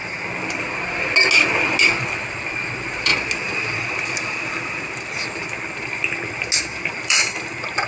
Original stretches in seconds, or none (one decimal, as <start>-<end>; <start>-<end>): 0.0-2.0; 3.1-6.6